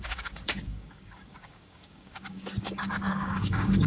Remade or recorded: remade